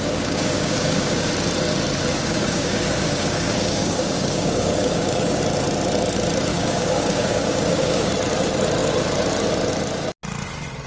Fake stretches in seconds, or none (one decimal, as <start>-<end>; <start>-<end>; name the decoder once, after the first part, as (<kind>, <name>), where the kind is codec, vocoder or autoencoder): 0.0-1.3 (codec, DAC); 2.1-5.4; 6.5-8.1